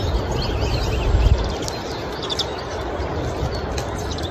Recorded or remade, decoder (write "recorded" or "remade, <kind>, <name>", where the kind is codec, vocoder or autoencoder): recorded